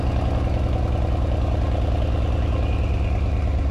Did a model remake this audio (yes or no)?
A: no